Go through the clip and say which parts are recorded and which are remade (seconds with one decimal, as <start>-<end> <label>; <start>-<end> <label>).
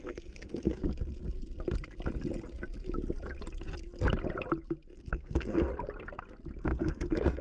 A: 0.0-0.8 remade; 0.8-5.0 recorded; 5.0-5.7 remade; 5.7-6.6 recorded; 6.6-7.4 remade